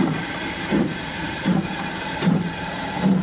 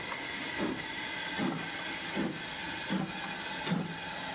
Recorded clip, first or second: second